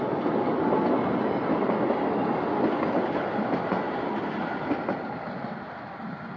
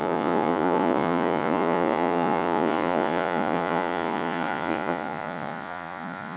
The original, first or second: first